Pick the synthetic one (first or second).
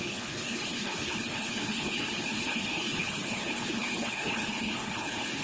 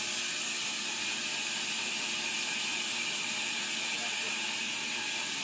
first